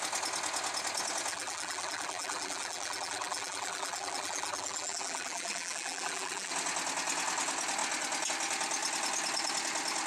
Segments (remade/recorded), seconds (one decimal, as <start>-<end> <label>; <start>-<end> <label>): 0.0-1.3 recorded; 1.3-6.5 remade; 6.5-10.1 recorded